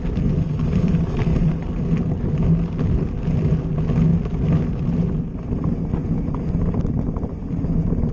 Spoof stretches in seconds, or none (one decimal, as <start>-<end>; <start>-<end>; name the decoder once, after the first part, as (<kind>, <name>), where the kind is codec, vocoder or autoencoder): none